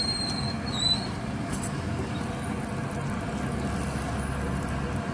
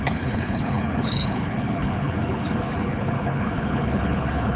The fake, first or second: second